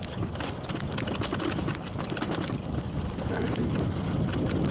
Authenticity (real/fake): real